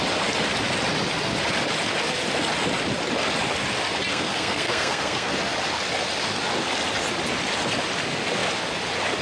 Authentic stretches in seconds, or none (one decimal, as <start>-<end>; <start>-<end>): 0.0-4.1; 5.3-9.2